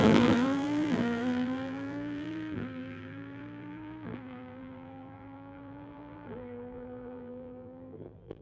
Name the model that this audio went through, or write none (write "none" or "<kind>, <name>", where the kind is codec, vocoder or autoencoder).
vocoder, BigVGAN v2